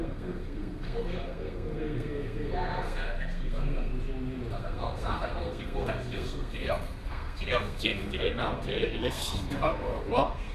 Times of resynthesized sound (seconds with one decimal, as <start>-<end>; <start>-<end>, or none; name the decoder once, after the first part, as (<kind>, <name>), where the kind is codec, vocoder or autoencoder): 0.0-3.9 (codec, SNAC); 4.5-10.5

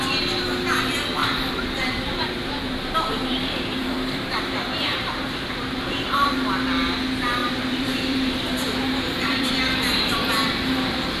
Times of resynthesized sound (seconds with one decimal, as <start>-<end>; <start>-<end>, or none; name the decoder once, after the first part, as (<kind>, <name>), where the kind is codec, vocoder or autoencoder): 1.2-6.3 (vocoder, BigVGAN v2); 7.4-9.6

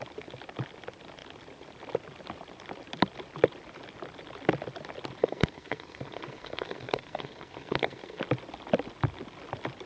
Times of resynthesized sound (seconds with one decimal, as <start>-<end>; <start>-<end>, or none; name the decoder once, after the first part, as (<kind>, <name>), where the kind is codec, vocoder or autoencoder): 5.2-8.2 (codec, SNAC)

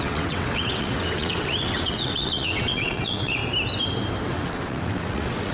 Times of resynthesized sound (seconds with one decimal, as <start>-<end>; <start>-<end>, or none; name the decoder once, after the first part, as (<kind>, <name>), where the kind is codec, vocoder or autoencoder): 0.0-3.4 (vocoder, WaveNeXt); 4.3-5.5

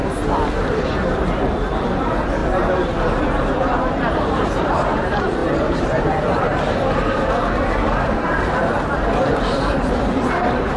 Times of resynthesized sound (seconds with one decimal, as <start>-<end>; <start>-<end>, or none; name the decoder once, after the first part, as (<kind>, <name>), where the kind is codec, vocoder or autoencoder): 0.8-2.4 (vocoder, BigVGAN v2); 3.6-10.8

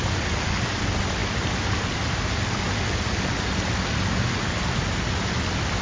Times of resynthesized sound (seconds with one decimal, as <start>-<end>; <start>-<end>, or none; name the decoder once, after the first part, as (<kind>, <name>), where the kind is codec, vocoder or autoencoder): none

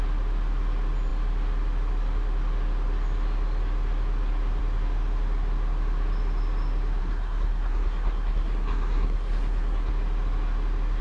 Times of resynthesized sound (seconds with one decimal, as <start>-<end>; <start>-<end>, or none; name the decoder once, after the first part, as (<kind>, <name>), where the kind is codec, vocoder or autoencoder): 7.0-9.9 (codec, SNAC)